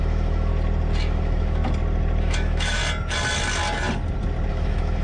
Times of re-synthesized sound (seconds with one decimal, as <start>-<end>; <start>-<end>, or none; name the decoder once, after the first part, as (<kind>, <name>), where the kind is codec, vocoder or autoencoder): 0.0-0.5 (autoencoder, DAC-VAE); 1.0-1.6; 2.2-2.8; 4.5-5.0